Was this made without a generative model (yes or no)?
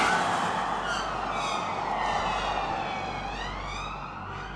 yes